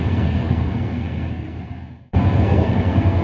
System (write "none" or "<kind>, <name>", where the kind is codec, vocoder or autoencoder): codec, SNAC